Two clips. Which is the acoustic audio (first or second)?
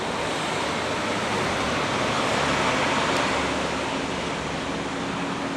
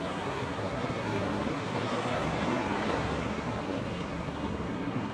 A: first